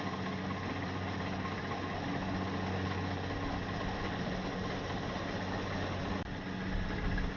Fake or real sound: real